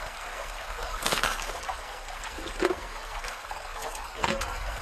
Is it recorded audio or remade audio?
remade